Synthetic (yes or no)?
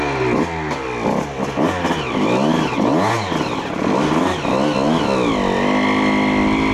no